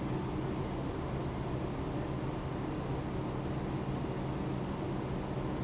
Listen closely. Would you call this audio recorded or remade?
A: recorded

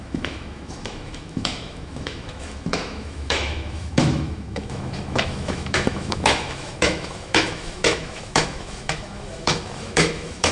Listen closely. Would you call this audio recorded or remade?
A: remade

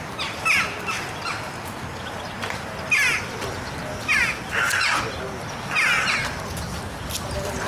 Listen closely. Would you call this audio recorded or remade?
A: recorded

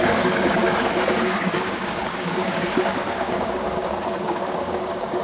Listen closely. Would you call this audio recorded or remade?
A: remade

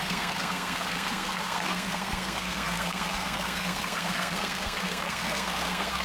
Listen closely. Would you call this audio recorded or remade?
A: remade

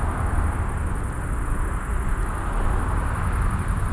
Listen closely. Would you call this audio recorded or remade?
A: recorded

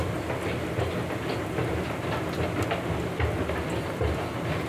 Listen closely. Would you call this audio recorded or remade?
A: recorded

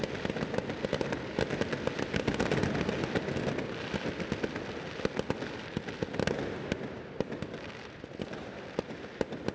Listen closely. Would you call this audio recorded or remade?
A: recorded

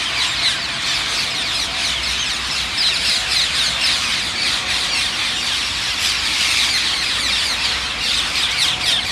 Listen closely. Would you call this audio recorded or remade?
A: recorded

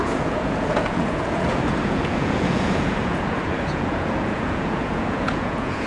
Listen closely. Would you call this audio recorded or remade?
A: remade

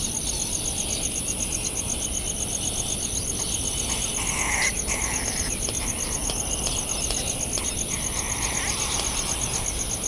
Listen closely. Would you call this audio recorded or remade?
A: recorded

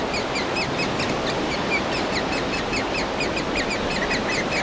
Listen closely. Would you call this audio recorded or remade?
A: recorded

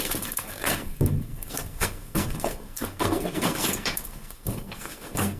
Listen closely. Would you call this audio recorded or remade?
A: remade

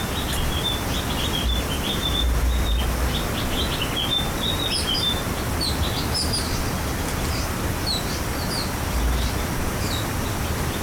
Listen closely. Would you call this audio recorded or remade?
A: recorded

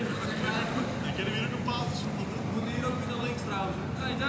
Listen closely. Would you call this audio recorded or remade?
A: recorded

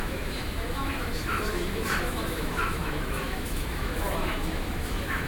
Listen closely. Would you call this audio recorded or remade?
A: remade